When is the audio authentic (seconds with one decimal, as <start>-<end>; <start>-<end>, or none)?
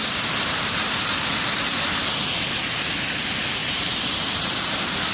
2.0-3.6; 4.6-5.1